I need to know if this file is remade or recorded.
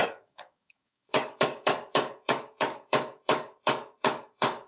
remade